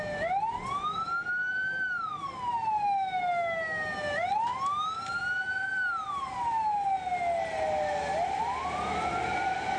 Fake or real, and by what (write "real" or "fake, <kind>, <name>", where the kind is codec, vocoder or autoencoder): real